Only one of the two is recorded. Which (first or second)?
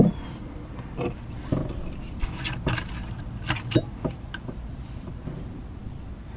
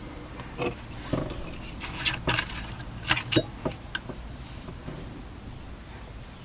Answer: second